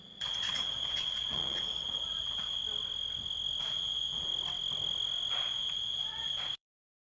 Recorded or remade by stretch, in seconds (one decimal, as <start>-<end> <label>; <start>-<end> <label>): 0.0-2.6 remade; 2.6-3.6 recorded; 3.6-4.3 remade; 4.3-5.3 recorded; 5.3-7.0 remade